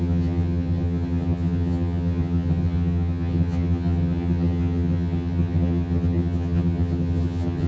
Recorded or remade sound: remade